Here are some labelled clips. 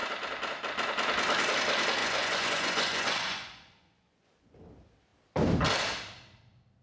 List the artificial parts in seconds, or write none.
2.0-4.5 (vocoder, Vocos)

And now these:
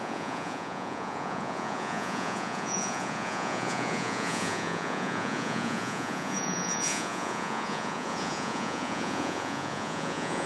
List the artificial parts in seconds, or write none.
0.0-10.5 (vocoder, Vocos)

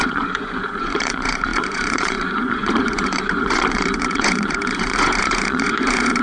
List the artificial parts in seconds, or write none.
0.0-6.2 (vocoder, Vocos)

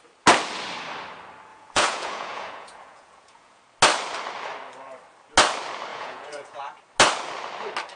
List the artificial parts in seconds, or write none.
1.5-3.6 (vocoder, Vocos); 5.9-6.6